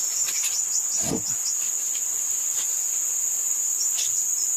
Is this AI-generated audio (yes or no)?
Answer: no